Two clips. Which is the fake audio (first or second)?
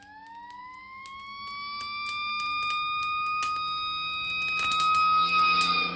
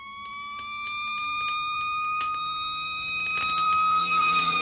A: second